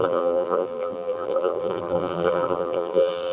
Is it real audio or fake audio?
fake